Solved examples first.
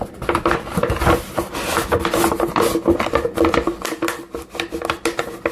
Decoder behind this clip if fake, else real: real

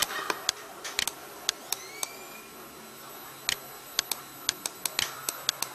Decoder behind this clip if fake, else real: real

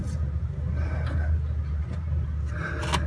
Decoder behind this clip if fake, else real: real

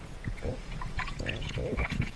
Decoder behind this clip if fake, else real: fake, vocoder, Vocos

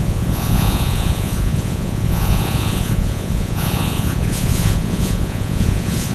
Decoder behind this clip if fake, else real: fake, vocoder, Vocos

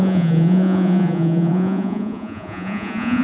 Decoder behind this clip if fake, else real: fake, vocoder, Vocos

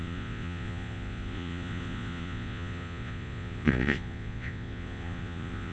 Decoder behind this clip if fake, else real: fake, vocoder, Vocos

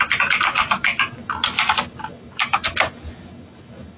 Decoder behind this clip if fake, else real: real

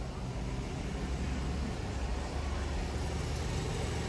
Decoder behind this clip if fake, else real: real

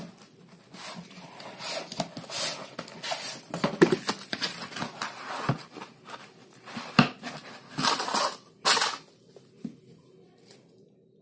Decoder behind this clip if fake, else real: real